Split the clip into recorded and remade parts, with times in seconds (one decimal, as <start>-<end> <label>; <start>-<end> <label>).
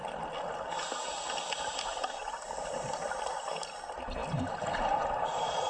0.0-5.7 recorded